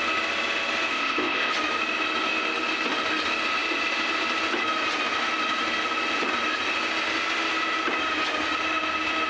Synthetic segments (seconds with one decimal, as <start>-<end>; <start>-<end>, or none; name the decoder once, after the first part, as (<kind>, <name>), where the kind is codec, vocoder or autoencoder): 0.9-1.5 (codec, ZipCodec)